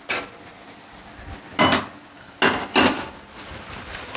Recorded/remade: recorded